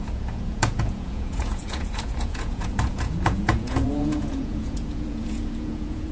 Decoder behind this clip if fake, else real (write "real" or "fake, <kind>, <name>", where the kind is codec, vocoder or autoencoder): fake, vocoder, Vocos